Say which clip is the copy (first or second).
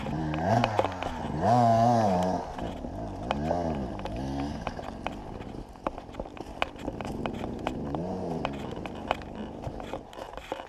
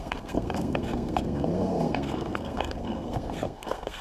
second